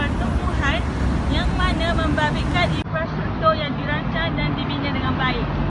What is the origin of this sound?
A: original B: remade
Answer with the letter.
A